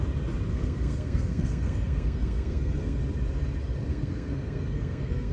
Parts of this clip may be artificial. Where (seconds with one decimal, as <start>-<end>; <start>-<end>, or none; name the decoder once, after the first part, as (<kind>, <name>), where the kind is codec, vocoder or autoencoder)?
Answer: 0.5-3.0 (codec, SNAC); 3.9-5.3